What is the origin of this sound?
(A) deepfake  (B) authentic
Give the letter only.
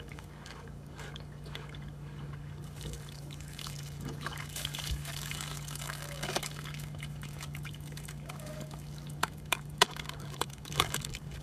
A